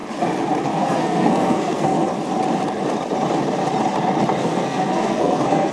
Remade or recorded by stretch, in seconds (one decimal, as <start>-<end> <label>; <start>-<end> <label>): 0.0-0.6 recorded; 0.6-2.1 remade; 2.1-4.4 recorded; 4.4-5.7 remade